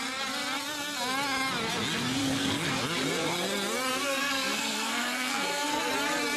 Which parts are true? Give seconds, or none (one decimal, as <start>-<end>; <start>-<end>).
0.0-2.2; 2.7-3.9; 5.8-6.4